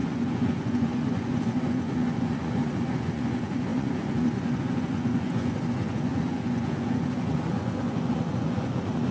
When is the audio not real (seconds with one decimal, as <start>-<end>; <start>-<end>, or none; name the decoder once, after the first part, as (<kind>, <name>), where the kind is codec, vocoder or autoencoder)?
0.0-9.1 (vocoder, Vocos)